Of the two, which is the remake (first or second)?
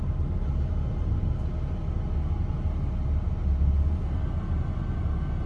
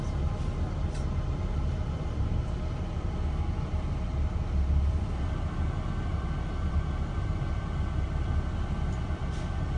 second